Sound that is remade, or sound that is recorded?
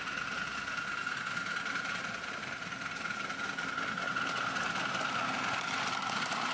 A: recorded